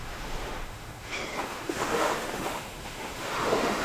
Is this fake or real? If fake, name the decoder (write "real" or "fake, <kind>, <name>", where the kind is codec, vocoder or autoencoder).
fake, autoencoder, DAC-VAE